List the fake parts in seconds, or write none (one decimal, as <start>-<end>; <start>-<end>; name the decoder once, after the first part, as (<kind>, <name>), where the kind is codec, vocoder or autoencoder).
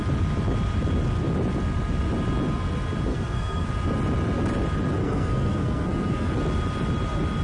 3.1-3.7 (codec, SNAC); 5.0-6.3